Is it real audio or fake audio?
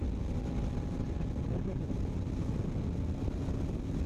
real